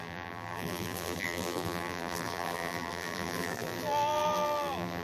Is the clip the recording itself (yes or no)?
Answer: no